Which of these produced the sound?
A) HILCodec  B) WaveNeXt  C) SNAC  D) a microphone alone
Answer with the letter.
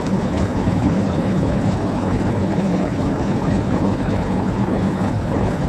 A